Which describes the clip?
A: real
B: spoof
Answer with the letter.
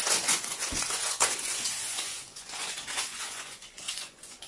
B